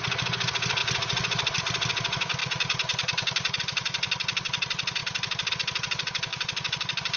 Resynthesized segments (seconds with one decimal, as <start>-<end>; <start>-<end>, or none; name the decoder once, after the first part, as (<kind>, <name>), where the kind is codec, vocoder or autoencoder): 0.8-1.6 (vocoder, BigVGAN v2); 2.4-3.6; 5.0-5.5; 6.3-7.2